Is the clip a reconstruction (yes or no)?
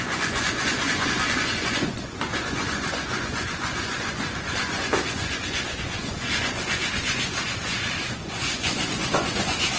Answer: yes